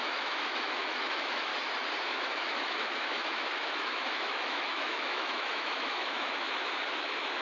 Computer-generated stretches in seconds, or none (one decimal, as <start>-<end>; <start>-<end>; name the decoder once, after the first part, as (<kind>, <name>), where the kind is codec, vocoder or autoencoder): 0.0-1.5 (autoencoder, DAC-VAE); 2.0-7.4